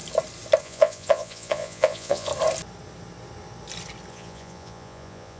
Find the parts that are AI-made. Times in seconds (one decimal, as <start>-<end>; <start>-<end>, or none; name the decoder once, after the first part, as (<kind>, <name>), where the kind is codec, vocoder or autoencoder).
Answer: 0.6-2.3 (vocoder, Vocos); 4.1-5.4